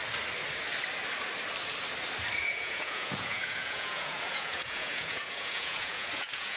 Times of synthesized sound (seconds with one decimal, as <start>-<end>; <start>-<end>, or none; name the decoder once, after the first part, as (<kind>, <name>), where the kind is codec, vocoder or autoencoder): 2.4-6.6 (vocoder, Vocos)